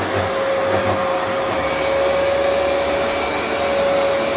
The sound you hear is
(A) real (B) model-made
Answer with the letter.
A